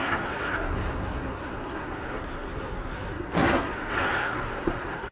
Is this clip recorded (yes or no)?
no